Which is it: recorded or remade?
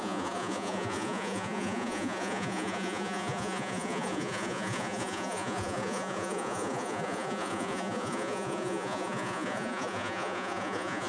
remade